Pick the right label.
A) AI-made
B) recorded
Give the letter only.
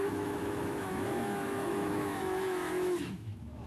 A